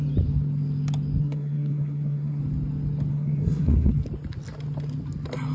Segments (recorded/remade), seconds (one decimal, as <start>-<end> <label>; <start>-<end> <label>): 0.0-1.2 recorded; 1.2-2.4 remade; 2.4-3.1 recorded; 3.1-3.9 remade; 3.9-5.5 recorded